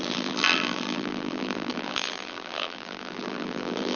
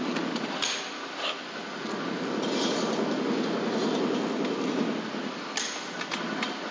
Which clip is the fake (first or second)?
first